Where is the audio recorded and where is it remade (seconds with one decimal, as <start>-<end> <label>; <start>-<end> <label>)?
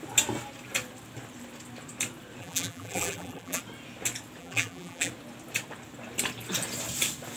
0.0-2.4 recorded; 2.4-3.6 remade; 3.6-4.4 recorded; 4.4-5.1 remade; 5.1-7.4 recorded